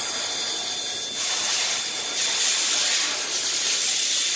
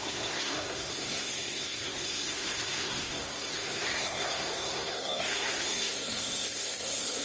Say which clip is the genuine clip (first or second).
first